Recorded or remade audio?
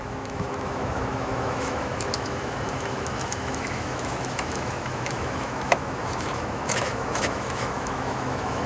remade